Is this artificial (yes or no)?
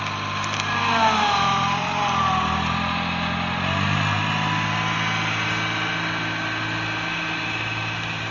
no